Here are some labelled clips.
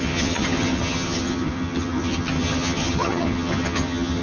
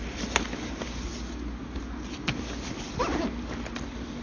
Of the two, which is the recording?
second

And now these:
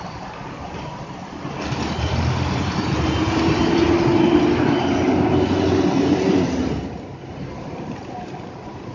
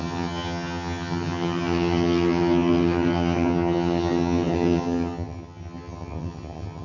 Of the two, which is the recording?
first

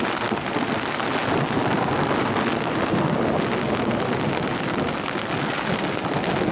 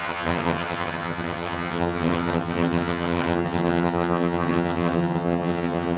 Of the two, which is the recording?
first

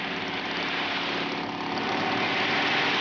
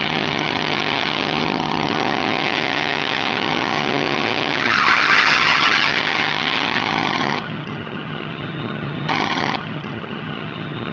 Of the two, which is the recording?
first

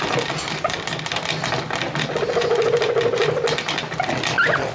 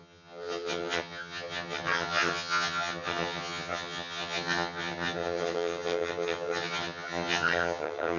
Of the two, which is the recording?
first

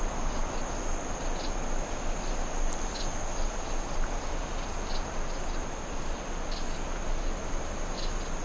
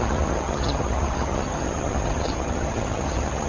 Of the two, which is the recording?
first